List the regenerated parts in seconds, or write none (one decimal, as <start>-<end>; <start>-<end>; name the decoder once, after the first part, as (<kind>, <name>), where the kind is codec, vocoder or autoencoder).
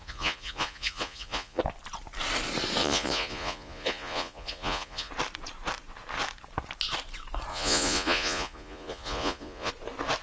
0.0-1.6 (vocoder, Vocos); 2.8-5.1; 7.5-9.7